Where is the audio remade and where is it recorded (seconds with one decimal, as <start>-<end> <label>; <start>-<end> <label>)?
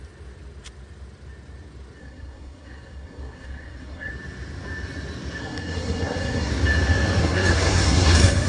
0.0-2.0 recorded; 2.0-4.1 remade; 4.1-5.4 recorded; 5.4-6.5 remade; 6.5-7.2 recorded; 7.2-8.5 remade